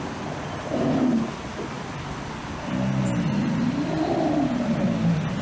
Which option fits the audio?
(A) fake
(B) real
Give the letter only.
B